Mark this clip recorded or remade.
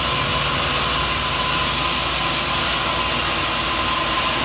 recorded